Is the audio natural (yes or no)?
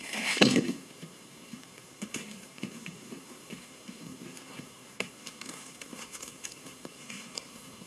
no